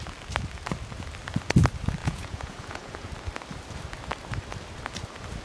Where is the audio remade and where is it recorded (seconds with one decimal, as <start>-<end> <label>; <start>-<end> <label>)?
0.0-2.0 recorded; 2.0-3.1 remade; 3.1-5.4 recorded